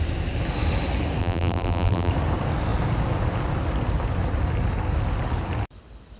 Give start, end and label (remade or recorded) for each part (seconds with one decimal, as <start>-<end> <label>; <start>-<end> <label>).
0.0-1.2 recorded; 1.2-2.1 remade; 2.1-6.2 recorded